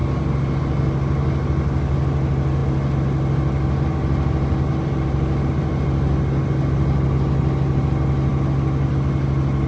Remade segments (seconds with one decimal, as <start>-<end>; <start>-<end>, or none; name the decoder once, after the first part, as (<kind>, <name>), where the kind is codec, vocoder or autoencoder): none